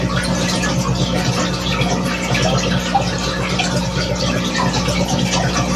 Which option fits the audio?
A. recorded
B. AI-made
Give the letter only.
A